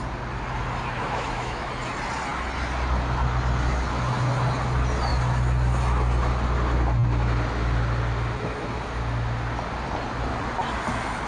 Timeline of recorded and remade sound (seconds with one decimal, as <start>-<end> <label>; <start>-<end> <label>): 0.0-1.0 recorded; 1.0-1.7 remade; 1.7-11.3 recorded